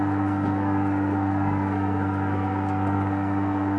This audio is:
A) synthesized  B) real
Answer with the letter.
A